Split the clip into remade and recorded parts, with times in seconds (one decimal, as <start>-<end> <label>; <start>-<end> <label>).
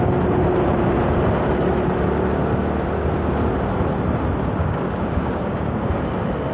0.0-4.6 recorded; 4.6-6.0 remade; 6.0-6.5 recorded